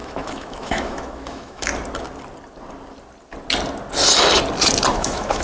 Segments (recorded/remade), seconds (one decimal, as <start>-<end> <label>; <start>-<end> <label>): 0.0-1.7 remade; 1.7-4.9 recorded; 4.9-5.4 remade